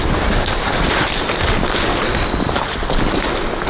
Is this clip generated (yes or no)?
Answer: no